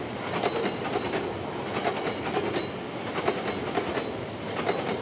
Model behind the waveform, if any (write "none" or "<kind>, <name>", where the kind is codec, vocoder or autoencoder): none